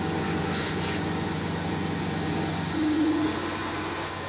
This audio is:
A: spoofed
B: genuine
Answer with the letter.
A